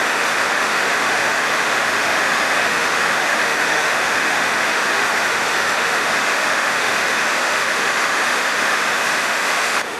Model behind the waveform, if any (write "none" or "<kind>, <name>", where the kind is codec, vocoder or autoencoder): autoencoder, DAC-VAE